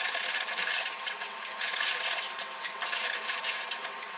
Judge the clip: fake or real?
fake